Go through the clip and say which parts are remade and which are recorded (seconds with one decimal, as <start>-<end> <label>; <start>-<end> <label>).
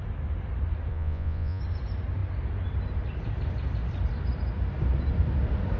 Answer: 0.0-0.9 recorded; 0.9-1.6 remade; 1.6-5.8 recorded